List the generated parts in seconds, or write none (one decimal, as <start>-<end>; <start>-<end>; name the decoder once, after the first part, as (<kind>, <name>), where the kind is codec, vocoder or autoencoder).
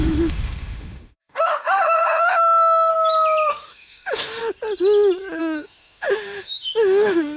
0.0-2.9 (autoencoder, DAC-VAE); 3.5-4.4; 5.4-7.4